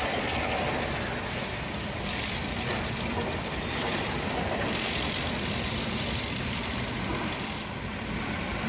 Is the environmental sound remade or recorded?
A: remade